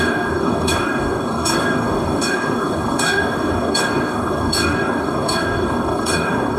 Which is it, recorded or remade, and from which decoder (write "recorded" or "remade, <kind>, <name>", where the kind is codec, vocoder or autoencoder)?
remade, codec, DAC